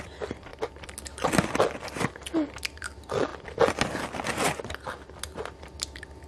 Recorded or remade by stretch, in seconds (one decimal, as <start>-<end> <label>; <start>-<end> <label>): 0.0-6.3 recorded